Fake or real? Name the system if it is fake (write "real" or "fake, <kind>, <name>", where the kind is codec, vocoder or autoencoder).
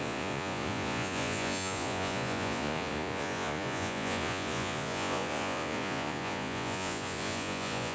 fake, vocoder, Vocos